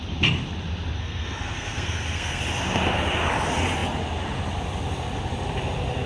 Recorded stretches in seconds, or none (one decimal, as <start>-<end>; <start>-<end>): 0.0-1.0; 2.4-6.1